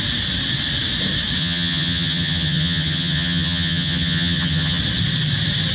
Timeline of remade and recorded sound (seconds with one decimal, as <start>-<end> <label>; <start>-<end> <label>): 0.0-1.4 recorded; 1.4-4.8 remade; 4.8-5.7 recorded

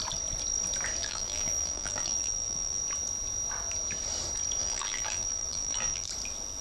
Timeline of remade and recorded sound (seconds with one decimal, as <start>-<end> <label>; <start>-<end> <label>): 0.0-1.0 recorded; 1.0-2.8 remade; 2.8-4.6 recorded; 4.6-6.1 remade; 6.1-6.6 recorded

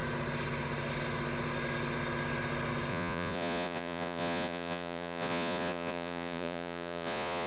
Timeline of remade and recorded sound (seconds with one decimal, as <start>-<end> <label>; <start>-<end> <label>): 0.0-2.9 recorded; 2.9-7.5 remade

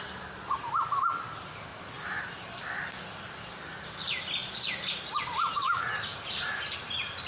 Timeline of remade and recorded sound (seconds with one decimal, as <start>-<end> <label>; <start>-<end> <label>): 0.0-1.7 recorded; 1.7-3.4 remade; 3.4-6.1 recorded; 6.1-7.3 remade

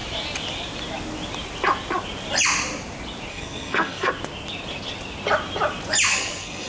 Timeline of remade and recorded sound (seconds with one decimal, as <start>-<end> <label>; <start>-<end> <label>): 0.0-3.3 recorded; 3.3-4.1 remade; 4.1-6.1 recorded; 6.1-6.7 remade

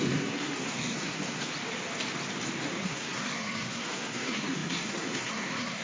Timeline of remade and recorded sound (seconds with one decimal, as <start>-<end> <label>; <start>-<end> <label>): 0.0-1.5 remade; 1.5-2.6 recorded; 2.6-5.8 remade